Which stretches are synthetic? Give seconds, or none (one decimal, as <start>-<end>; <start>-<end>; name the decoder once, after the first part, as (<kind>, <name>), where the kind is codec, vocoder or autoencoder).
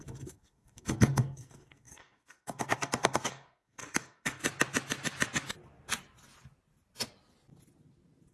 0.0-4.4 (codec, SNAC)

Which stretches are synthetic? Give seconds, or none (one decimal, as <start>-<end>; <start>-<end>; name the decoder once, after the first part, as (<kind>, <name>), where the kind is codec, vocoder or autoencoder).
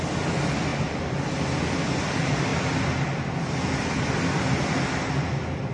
none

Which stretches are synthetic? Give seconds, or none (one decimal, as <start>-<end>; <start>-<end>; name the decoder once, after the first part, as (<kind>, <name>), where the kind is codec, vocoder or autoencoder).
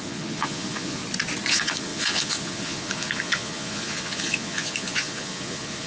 0.0-1.0 (vocoder, Vocos); 1.5-5.9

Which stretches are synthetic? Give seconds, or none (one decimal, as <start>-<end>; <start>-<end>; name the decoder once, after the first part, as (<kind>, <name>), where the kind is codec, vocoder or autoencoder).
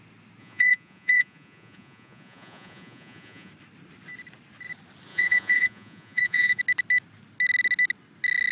0.4-3.5 (vocoder, Vocos); 5.1-6.6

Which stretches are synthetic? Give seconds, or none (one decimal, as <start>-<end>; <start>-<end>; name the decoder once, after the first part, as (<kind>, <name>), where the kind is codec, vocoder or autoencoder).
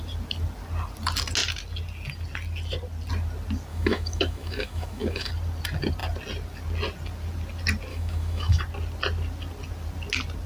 3.7-5.3 (autoencoder, DAC-VAE); 7.9-8.6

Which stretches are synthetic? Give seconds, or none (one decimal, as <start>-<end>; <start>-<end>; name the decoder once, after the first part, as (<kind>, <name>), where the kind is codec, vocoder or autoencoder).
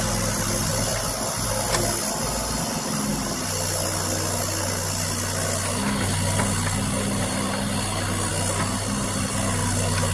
none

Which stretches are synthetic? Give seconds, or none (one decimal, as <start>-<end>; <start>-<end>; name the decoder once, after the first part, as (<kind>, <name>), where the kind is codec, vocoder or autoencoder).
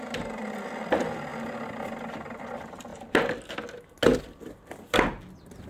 none